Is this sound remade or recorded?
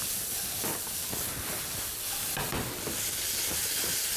recorded